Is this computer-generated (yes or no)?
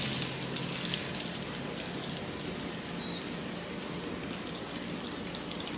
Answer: no